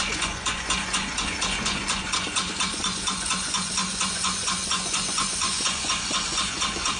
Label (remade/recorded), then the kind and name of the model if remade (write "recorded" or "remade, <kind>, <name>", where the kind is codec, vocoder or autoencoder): remade, vocoder, Vocos